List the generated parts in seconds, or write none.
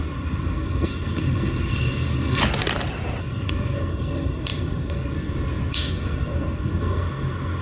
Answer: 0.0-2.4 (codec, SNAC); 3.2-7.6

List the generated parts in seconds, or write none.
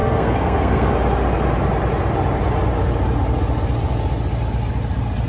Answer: 0.0-0.9 (codec, SNAC)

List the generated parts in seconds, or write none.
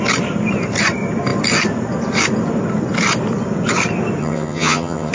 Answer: 4.2-5.1 (vocoder, HiFi-GAN)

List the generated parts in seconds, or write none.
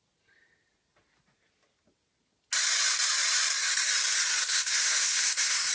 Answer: 4.4-5.7 (codec, SNAC)